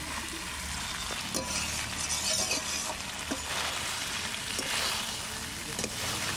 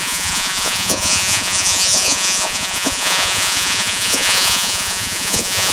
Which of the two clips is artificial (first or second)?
second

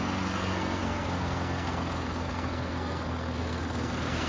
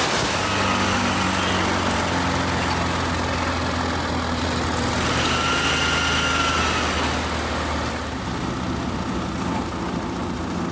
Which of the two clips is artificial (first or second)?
first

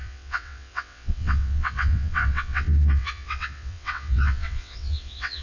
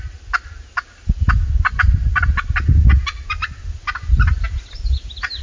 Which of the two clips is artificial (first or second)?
first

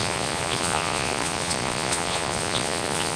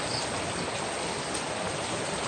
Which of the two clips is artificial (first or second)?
first